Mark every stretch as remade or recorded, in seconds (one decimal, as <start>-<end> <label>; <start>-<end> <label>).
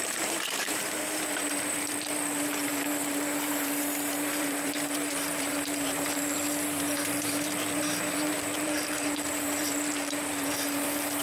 0.0-11.2 remade